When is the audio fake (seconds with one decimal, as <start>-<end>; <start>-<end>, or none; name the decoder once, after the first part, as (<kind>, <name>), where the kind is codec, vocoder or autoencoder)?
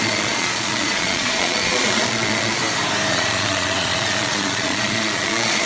0.0-2.6 (vocoder, Vocos); 3.1-5.7